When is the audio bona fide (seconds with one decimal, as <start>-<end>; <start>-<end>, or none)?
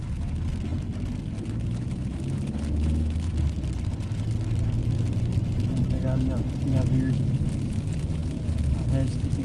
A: 0.0-9.4